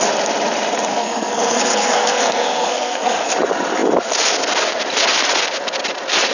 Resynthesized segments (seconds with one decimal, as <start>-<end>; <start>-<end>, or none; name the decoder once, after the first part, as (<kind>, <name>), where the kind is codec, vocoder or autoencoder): 0.9-3.3 (codec, SNAC)